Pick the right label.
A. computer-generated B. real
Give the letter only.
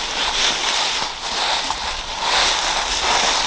B